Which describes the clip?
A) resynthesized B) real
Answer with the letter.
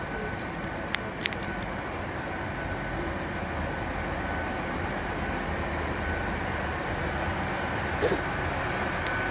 B